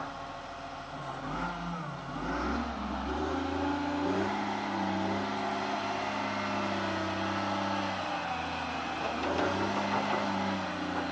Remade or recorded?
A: recorded